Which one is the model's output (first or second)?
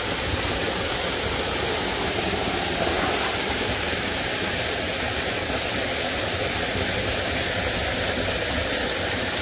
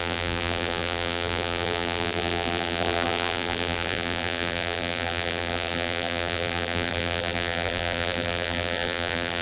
second